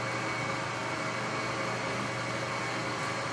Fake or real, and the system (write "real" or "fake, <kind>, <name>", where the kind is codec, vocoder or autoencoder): real